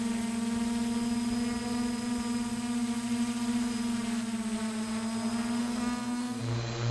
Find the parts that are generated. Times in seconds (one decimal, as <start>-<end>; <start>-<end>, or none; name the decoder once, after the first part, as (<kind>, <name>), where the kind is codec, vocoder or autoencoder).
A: 5.6-6.4 (codec, SNAC)